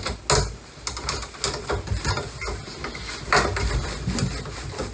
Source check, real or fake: real